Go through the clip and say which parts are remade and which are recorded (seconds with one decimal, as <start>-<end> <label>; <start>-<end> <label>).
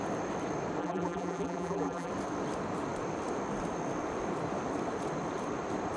0.0-0.8 recorded; 0.8-2.1 remade; 2.1-6.0 recorded